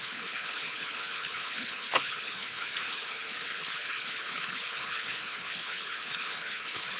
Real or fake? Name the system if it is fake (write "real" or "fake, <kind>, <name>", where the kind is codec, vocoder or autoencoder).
fake, codec, HILCodec